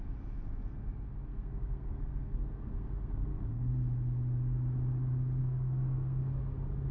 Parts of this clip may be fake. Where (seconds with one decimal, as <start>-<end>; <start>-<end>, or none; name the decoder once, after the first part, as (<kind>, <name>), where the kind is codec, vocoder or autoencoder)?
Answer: 1.3-3.7 (codec, SNAC); 5.4-6.2